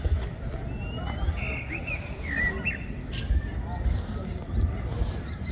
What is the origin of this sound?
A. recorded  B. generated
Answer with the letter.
A